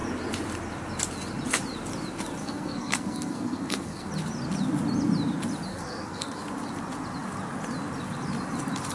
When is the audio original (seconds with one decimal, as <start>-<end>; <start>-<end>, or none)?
0.0-2.4; 4.1-5.7; 6.4-8.9